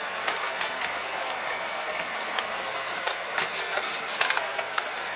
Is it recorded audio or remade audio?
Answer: remade